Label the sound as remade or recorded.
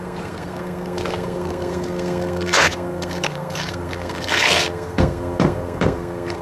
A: remade